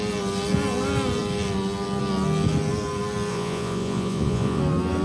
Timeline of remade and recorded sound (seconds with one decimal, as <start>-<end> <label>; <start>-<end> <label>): 0.0-3.3 recorded; 3.3-4.6 remade; 4.6-5.0 recorded

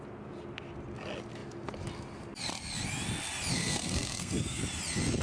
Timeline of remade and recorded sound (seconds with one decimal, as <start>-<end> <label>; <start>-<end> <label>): 0.0-3.5 recorded; 3.5-4.6 remade; 4.6-5.2 recorded

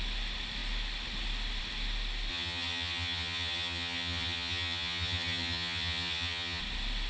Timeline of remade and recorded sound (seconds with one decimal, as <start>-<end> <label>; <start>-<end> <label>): 0.0-2.3 recorded; 2.3-6.6 remade; 6.6-7.1 recorded

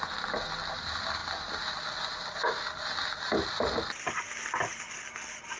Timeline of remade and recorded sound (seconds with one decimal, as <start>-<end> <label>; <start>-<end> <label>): 0.0-5.6 recorded

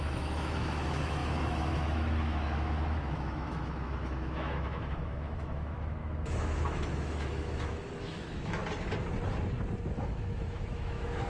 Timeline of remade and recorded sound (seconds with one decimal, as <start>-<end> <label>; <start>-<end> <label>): 0.0-8.6 remade; 8.6-10.0 recorded; 10.0-11.3 remade

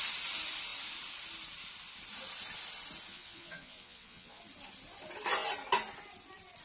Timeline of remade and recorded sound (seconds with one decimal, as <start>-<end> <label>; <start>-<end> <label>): 0.0-3.1 recorded; 3.1-4.4 remade; 4.4-6.6 recorded

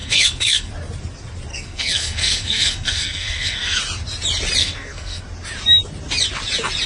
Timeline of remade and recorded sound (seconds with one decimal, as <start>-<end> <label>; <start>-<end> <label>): 0.0-0.7 remade; 0.7-1.5 recorded; 1.5-3.8 remade; 3.8-4.6 recorded; 4.6-5.2 remade; 5.2-6.9 recorded

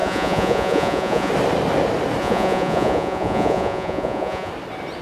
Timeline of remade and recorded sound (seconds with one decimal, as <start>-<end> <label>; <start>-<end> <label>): 0.0-1.3 remade; 1.3-2.2 recorded; 2.2-4.5 remade; 4.5-5.0 recorded